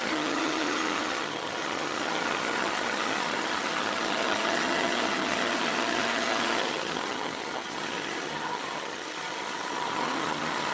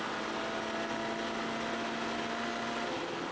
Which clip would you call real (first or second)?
second